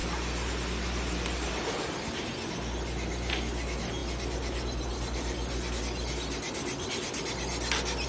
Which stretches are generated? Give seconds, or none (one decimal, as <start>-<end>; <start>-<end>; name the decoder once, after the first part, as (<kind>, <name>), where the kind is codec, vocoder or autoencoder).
none

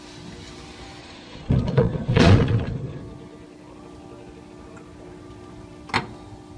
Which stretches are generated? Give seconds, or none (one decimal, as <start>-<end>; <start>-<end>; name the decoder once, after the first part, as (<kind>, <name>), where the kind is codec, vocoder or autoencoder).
1.0-3.0 (vocoder, Vocos)

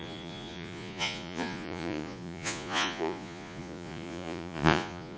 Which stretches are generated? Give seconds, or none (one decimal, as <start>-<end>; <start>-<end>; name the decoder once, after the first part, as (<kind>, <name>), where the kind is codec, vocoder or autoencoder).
0.0-5.2 (vocoder, Vocos)

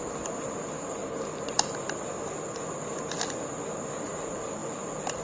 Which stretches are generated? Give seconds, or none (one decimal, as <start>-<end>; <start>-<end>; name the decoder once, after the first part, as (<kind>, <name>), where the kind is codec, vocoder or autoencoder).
none

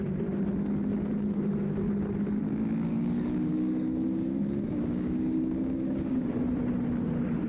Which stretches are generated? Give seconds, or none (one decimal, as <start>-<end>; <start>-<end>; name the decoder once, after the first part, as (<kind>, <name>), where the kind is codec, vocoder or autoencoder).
2.9-6.3 (codec, DAC)

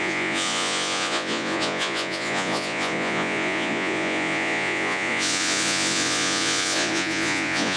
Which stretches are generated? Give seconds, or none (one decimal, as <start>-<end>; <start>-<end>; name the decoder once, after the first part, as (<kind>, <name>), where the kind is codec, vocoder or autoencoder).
0.0-7.8 (vocoder, Vocos)

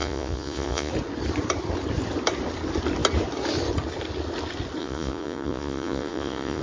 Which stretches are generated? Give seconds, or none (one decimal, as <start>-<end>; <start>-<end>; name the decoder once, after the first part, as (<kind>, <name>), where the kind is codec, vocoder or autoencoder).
0.0-0.9 (vocoder, Vocos); 4.8-6.6

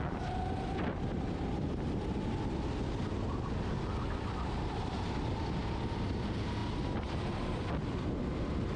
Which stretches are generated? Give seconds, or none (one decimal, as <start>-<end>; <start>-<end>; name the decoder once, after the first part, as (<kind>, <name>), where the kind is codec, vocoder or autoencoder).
none